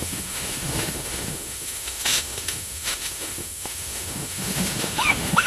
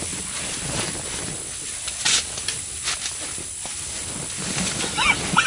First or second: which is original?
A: second